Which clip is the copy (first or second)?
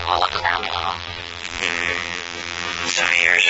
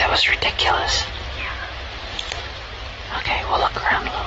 first